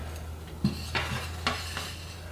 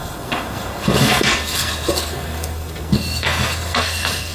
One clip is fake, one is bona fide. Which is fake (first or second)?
second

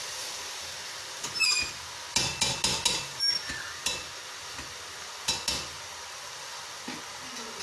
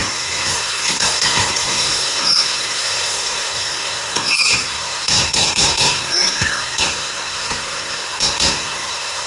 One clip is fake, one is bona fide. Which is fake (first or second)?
second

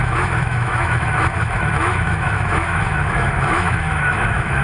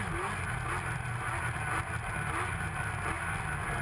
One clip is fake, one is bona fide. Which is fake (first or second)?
first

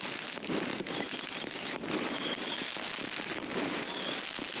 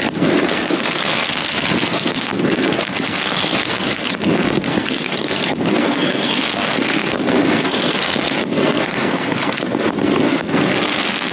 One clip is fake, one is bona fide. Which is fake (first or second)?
second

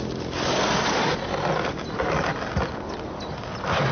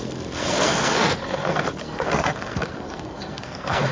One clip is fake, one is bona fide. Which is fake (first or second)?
second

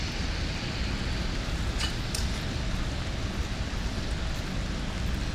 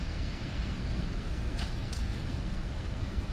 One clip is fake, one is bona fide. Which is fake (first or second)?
second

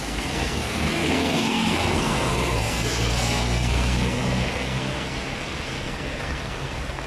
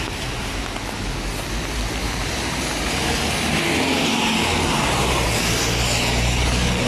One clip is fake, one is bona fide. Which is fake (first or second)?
first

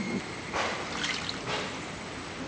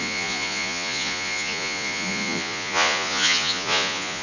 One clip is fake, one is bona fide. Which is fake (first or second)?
second